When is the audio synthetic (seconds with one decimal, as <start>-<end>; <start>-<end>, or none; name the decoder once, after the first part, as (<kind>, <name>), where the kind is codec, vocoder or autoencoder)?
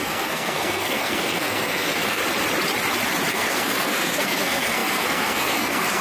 0.0-2.2 (codec, SNAC); 3.3-6.0